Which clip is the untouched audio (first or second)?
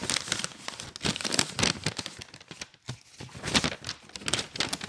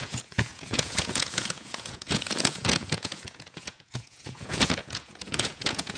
first